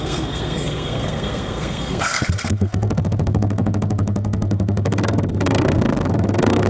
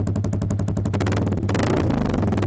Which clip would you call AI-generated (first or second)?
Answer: first